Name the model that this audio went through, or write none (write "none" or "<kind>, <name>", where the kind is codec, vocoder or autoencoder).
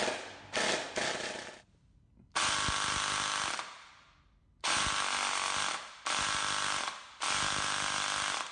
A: none